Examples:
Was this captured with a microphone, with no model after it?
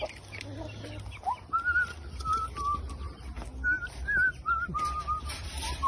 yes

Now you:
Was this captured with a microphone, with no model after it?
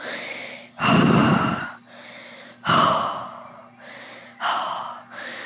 yes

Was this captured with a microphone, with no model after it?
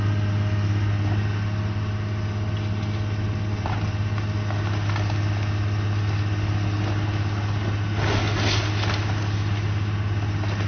yes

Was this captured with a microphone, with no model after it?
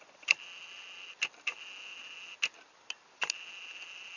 yes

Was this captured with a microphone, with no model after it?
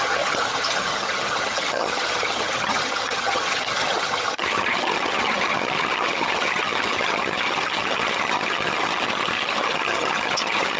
no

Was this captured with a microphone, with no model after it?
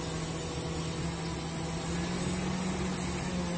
yes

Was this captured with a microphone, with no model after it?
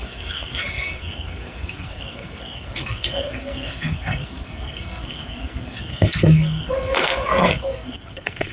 no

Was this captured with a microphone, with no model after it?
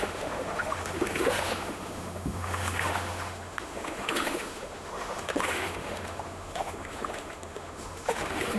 no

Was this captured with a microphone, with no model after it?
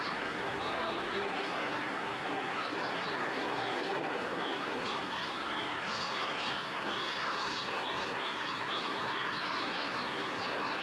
no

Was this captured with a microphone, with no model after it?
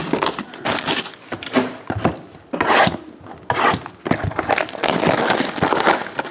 yes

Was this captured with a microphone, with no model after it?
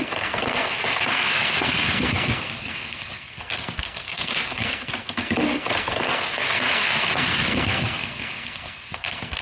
no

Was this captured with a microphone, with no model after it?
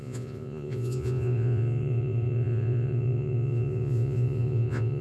no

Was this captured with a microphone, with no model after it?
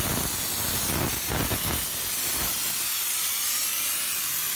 yes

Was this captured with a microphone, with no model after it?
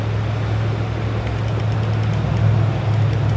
yes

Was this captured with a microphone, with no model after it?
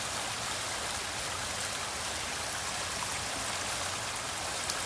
yes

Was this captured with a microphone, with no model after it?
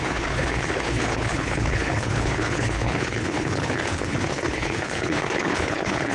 no